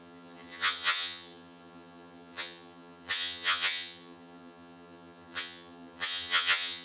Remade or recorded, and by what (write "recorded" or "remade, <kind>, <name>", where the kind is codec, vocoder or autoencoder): remade, vocoder, HiFi-GAN